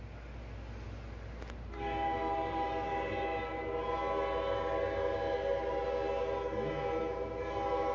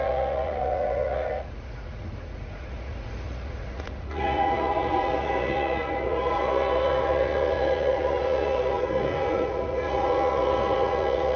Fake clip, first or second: second